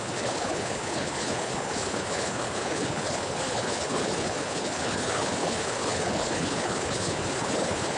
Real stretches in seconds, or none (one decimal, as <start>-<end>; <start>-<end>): none